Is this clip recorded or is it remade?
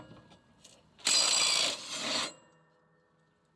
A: recorded